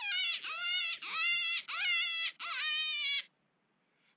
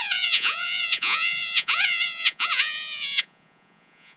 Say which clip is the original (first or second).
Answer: first